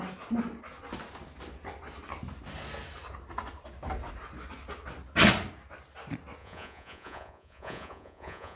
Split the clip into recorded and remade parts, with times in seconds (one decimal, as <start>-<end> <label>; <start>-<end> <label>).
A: 0.0-6.4 recorded; 6.4-8.6 remade